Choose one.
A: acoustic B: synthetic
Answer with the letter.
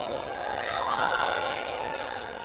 B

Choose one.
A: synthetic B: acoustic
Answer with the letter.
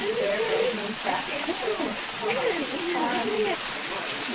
A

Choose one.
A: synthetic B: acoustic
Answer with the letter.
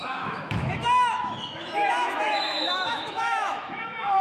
A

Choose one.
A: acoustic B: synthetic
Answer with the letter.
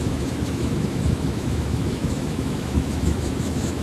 B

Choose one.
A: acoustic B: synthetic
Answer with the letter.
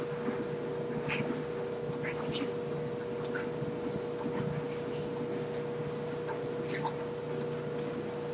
A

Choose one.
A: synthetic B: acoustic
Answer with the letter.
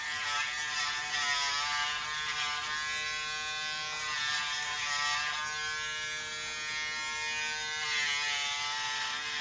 B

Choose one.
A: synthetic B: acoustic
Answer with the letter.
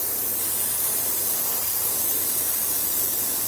A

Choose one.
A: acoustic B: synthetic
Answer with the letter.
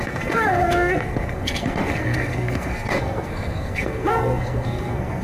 B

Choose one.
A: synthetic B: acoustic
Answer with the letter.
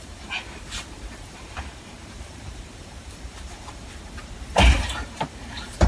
A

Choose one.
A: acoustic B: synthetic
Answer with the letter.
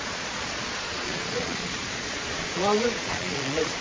B